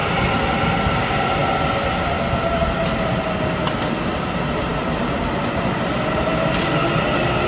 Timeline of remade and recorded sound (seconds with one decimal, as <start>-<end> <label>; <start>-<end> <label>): 0.0-7.5 recorded